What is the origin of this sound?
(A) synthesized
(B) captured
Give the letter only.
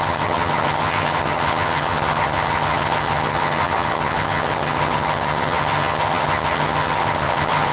A